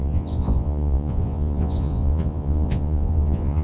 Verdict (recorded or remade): remade